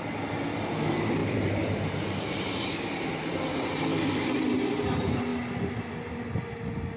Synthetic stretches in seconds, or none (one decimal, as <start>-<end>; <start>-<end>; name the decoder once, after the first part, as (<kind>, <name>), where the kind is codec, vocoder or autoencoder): 1.2-4.8 (vocoder, BigVGAN v2)